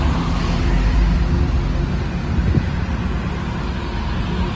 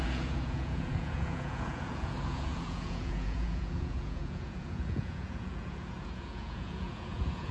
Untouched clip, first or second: first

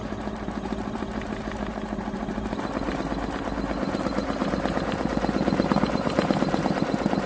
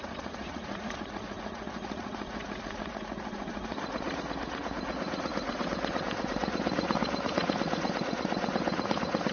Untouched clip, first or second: first